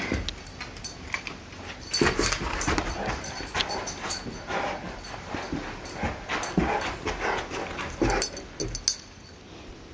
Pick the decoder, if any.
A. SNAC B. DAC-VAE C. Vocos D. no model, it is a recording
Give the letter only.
D